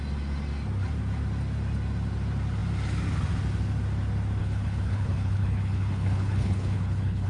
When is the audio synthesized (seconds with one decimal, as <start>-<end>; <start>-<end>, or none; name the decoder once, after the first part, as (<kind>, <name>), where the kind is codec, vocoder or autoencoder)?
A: 4.4-7.3 (codec, HILCodec)